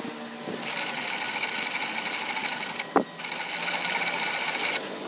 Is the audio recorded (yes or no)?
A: yes